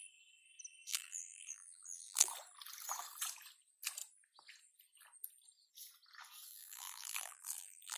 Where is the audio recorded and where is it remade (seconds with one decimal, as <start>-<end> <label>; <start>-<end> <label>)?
0.0-0.9 recorded; 0.9-2.3 remade; 2.3-6.5 recorded; 6.5-8.0 remade